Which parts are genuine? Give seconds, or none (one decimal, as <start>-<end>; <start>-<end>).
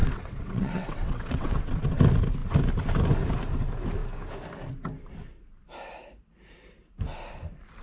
2.0-7.8